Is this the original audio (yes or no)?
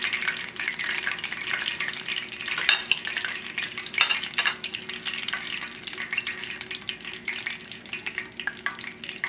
yes